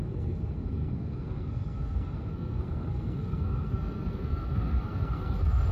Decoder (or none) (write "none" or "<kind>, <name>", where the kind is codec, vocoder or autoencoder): codec, SNAC